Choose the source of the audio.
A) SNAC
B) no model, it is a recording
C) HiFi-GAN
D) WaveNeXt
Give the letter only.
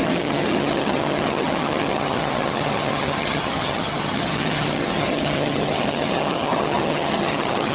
C